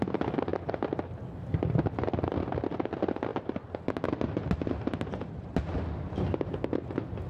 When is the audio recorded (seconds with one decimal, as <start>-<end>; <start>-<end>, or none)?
0.0-7.3